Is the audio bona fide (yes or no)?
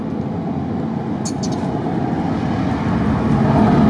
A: yes